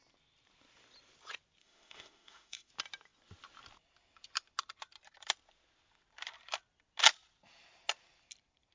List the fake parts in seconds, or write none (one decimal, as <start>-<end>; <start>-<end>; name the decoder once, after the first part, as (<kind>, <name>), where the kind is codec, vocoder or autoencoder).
1.6-2.7 (autoencoder, DAC-VAE)